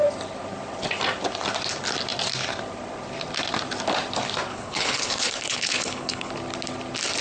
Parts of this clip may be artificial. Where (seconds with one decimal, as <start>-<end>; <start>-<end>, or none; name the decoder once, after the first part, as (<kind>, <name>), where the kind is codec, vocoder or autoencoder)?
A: 4.5-6.3 (codec, HILCodec)